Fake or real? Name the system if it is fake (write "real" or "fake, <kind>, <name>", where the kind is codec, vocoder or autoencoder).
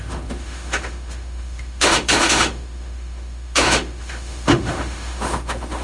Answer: fake, autoencoder, DAC-VAE